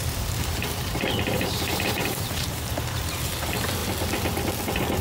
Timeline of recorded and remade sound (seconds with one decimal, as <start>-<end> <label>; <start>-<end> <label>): 0.0-3.0 remade; 3.0-5.0 recorded